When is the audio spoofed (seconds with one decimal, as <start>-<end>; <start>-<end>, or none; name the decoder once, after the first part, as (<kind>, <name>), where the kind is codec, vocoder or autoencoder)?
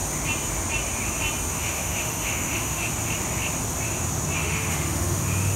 1.5-2.9 (autoencoder, DAC-VAE); 4.4-5.6